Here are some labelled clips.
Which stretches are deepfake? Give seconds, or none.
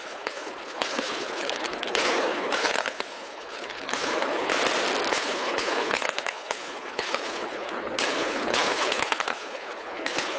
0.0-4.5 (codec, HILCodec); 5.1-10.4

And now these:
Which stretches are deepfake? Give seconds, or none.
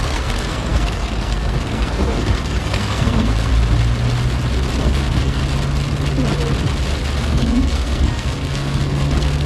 0.0-3.5 (codec, SNAC); 4.8-5.4; 7.2-9.5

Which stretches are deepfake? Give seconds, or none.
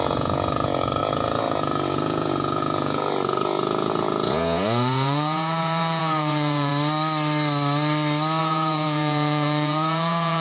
0.0-6.7 (vocoder, Vocos); 8.4-10.4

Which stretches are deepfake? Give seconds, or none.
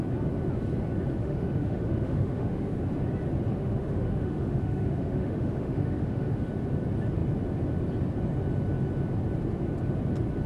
1.2-2.8 (autoencoder, DAC-VAE); 3.6-6.4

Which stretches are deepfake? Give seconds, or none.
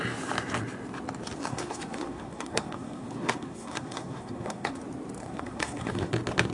1.4-4.8 (codec, SNAC); 5.2-6.1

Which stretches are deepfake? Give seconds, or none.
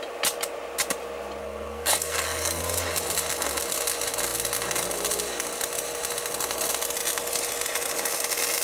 1.4-2.6 (codec, SNAC)